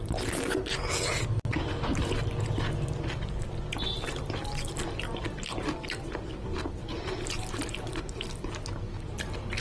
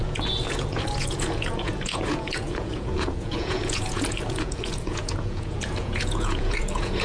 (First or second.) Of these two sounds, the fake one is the second